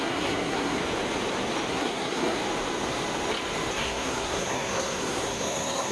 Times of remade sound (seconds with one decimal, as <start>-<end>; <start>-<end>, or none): 0.0-0.8; 1.7-2.4; 3.7-5.9